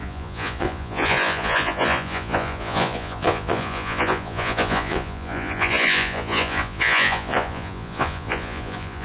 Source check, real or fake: fake